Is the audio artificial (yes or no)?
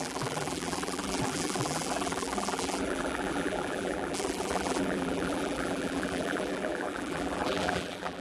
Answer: yes